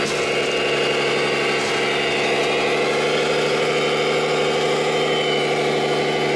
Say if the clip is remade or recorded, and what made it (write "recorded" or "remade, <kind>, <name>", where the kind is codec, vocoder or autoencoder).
recorded